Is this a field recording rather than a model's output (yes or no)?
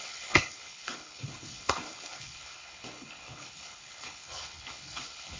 no